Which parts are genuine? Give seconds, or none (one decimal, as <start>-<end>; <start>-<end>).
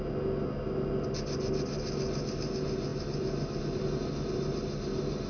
0.0-5.3